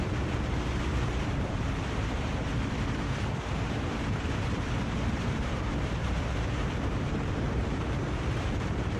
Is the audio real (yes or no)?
no